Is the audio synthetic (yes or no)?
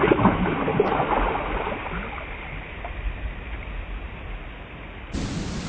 no